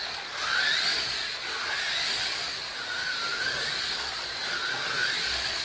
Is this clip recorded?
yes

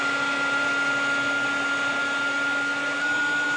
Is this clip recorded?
yes